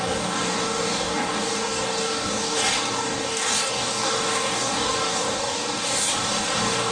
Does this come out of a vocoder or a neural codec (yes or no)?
yes